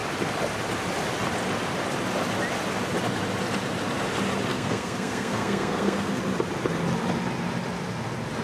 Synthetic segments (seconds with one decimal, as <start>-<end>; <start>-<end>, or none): 4.5-6.2